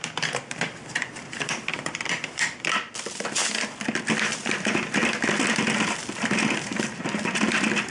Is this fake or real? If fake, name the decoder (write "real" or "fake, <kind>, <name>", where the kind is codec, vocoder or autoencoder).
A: fake, vocoder, BigVGAN v2